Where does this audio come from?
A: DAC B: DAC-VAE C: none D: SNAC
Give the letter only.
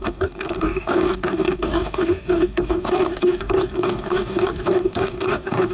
A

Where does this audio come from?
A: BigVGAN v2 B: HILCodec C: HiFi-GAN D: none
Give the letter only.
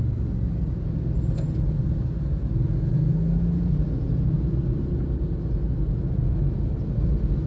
D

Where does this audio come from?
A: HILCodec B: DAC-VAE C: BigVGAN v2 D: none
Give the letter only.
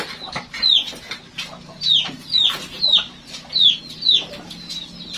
D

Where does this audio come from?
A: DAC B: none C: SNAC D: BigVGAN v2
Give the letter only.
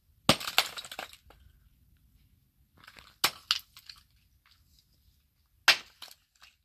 B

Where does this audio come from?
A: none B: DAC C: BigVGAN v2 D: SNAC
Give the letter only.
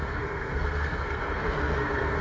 D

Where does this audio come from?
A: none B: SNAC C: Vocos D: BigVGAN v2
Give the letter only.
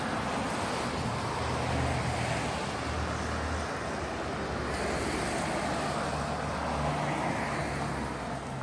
A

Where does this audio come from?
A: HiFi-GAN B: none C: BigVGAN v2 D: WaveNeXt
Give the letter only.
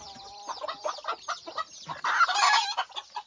B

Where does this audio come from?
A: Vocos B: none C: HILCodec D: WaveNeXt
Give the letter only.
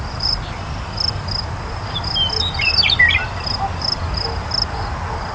B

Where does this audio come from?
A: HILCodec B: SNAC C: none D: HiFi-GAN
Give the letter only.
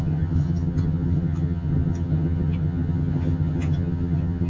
D